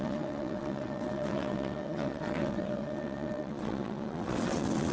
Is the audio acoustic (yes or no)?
no